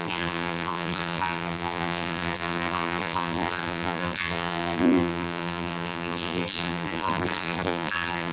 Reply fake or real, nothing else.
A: fake